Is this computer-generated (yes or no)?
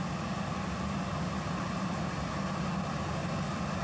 no